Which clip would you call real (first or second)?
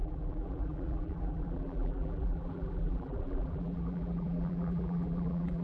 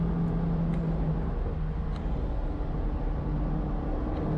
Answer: second